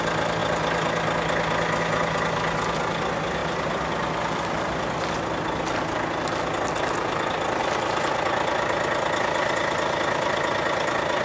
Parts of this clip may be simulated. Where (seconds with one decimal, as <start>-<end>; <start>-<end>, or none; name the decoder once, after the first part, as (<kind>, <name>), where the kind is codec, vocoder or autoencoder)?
none